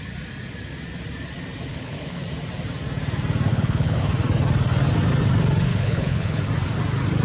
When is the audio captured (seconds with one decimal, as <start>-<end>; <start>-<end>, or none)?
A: 0.0-1.7; 2.2-3.5; 4.1-5.7; 6.4-7.2

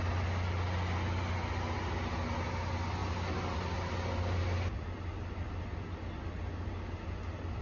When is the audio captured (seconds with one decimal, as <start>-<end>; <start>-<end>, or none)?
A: 0.0-7.6

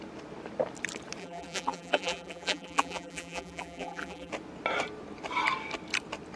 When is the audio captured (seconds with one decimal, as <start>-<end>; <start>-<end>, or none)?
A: 0.0-1.2; 4.3-6.4

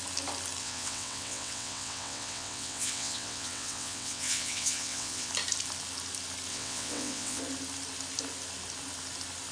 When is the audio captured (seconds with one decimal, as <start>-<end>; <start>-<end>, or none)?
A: 0.0-0.6; 5.3-6.5; 7.4-9.5

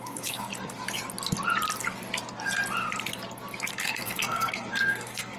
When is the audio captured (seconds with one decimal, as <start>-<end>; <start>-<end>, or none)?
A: 0.5-3.7

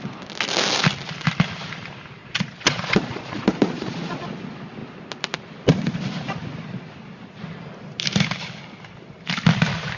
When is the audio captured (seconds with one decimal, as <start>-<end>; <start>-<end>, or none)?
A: 0.0-2.2; 4.2-10.0